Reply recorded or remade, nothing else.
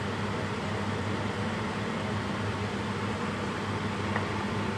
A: remade